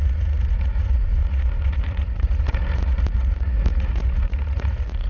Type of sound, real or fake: fake